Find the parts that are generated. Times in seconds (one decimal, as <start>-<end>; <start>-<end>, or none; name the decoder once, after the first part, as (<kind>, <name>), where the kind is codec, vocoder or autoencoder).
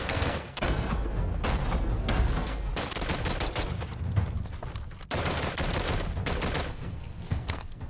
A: 0.0-1.3 (codec, SNAC); 1.8-2.7; 6.7-7.9